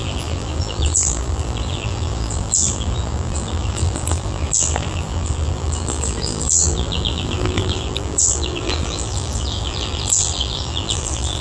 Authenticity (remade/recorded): remade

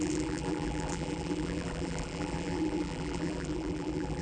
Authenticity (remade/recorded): remade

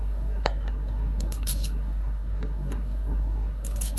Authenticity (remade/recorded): remade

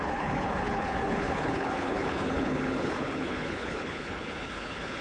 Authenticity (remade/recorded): remade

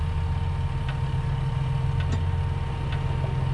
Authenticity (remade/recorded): recorded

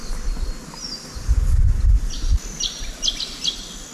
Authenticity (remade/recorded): recorded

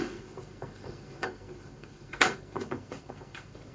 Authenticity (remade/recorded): remade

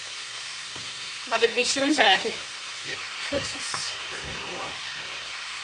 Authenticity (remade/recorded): remade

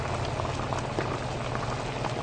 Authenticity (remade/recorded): recorded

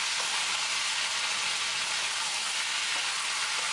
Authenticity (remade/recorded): recorded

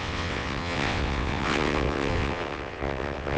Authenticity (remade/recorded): remade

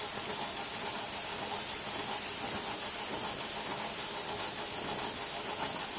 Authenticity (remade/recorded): recorded